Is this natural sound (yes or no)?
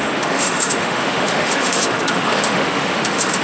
no